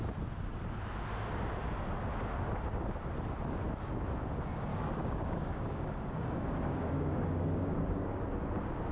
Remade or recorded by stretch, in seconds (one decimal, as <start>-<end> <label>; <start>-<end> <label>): 0.0-4.7 recorded; 4.7-8.2 remade; 8.2-8.9 recorded